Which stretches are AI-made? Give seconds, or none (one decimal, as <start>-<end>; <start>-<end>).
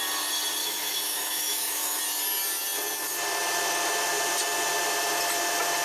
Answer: 0.6-2.0